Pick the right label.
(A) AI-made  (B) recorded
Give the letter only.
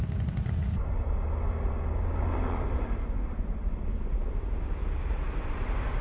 B